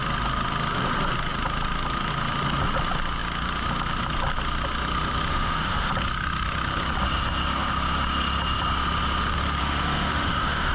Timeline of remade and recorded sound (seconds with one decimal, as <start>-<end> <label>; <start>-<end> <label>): 0.0-5.3 recorded; 5.3-5.9 remade; 5.9-9.6 recorded; 9.6-10.7 remade